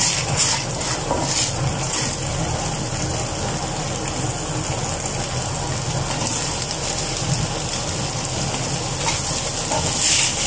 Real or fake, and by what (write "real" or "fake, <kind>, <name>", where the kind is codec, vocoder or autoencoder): real